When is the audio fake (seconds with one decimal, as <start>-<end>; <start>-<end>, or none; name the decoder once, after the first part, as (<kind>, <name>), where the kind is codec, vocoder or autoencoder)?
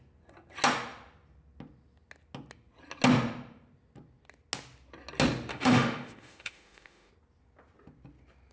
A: 5.5-7.1 (autoencoder, DAC-VAE)